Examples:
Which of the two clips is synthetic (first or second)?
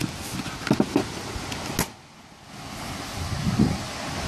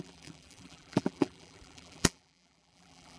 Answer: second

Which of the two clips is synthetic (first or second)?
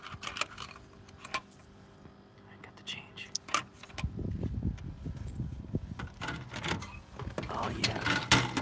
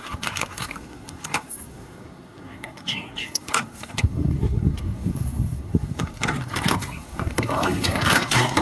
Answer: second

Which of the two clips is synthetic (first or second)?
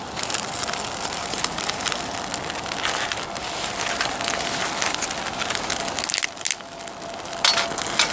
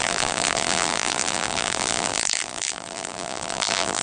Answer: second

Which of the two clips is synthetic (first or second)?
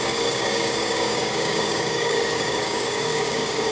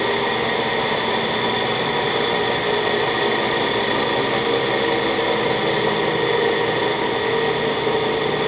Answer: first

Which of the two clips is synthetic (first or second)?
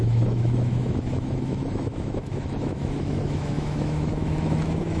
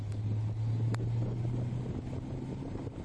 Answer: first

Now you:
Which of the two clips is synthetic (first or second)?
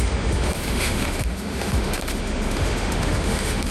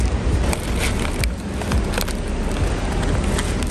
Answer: first